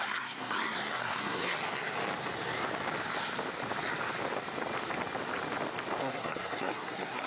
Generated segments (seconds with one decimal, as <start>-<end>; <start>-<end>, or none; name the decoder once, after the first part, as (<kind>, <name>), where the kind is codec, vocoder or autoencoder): 0.0-1.6 (codec, SNAC); 6.0-7.3